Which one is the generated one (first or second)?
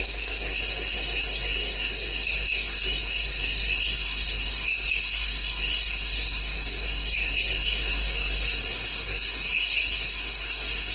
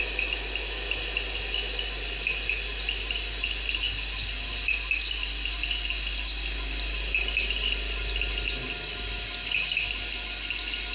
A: first